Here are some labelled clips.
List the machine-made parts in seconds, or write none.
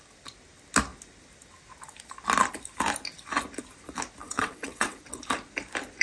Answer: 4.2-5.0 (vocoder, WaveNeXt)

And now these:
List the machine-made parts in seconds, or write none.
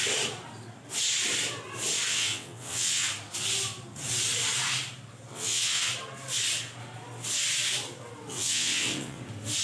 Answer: 2.1-3.1 (vocoder, WaveNeXt); 5.3-5.9; 8.3-9.2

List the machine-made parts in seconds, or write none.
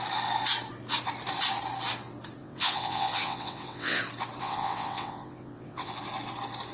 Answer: 2.4-4.0 (vocoder, WaveNeXt); 4.4-5.9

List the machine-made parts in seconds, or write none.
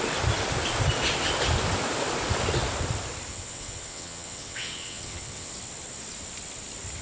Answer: 3.3-5.5 (vocoder, WaveNeXt)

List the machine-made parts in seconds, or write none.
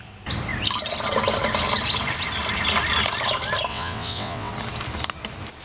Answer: 3.7-4.5 (vocoder, WaveNeXt)